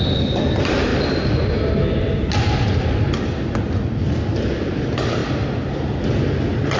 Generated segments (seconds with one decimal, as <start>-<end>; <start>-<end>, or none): none